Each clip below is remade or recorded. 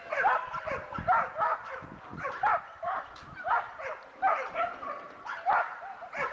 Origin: recorded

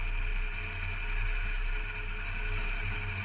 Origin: recorded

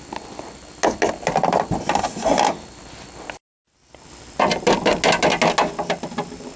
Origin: recorded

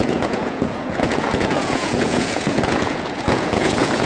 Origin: remade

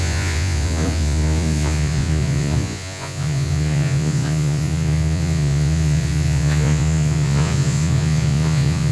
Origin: remade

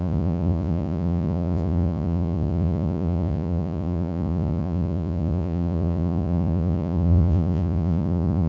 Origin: remade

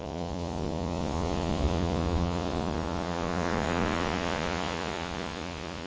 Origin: remade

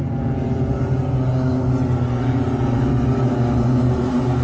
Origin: recorded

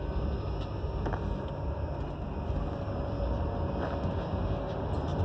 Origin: recorded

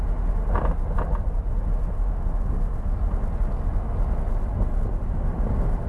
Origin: recorded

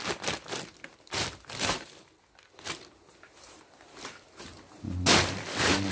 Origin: recorded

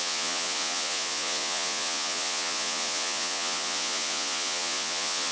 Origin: remade